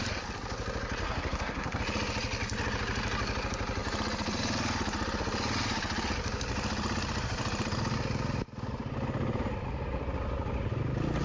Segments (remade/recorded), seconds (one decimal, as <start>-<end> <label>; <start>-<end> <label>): 0.0-1.0 recorded; 1.0-1.8 remade; 1.8-11.2 recorded